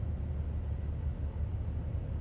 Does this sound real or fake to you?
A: real